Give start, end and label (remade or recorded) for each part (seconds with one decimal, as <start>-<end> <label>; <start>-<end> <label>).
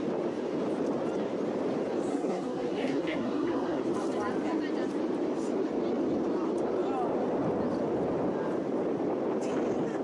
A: 0.0-2.1 recorded; 2.1-3.8 remade; 3.8-10.0 recorded